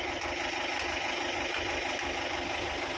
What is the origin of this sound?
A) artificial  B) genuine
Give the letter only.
B